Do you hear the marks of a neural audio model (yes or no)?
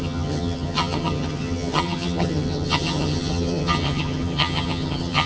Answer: yes